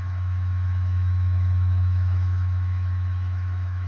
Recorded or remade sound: remade